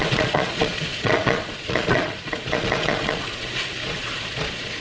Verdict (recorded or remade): remade